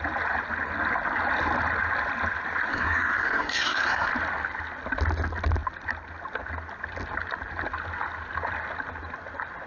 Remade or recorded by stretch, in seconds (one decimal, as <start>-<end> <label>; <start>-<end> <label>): 0.0-2.7 recorded; 2.7-4.1 remade; 4.1-9.7 recorded